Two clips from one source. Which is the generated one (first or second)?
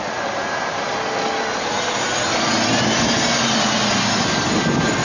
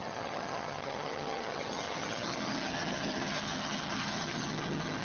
second